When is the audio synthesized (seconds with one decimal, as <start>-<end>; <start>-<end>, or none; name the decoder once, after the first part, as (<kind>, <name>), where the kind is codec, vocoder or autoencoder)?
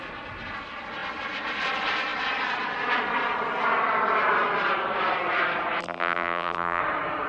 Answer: 5.8-6.8 (vocoder, BigVGAN v2)